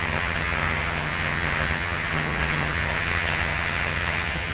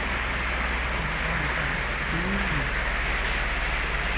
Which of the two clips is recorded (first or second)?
second